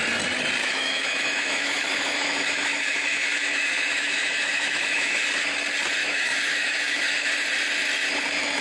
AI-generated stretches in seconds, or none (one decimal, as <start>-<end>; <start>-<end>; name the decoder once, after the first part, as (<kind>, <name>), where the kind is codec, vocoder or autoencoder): 0.6-5.2 (autoencoder, DAC-VAE); 6.0-7.3